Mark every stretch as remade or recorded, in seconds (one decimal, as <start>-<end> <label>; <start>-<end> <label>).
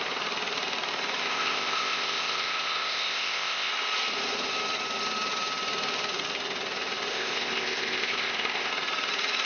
0.0-1.2 recorded; 1.2-3.7 remade; 3.7-7.1 recorded; 7.1-8.7 remade; 8.7-9.5 recorded